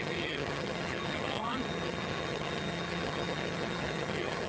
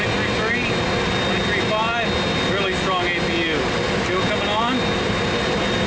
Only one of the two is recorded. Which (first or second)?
second